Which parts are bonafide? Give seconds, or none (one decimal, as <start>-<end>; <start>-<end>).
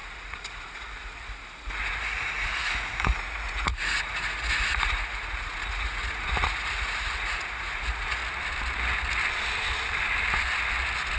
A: 8.2-11.2